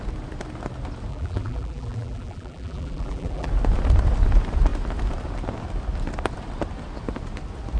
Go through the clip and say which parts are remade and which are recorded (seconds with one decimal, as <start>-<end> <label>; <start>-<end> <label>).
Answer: 0.0-1.1 recorded; 1.1-3.5 remade; 3.5-7.8 recorded